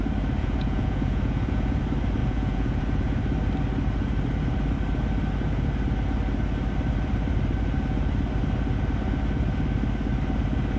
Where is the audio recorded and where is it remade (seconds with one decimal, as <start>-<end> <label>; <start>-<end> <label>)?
0.0-0.4 recorded; 0.4-1.8 remade; 1.8-2.2 recorded; 2.2-3.2 remade; 3.2-10.8 recorded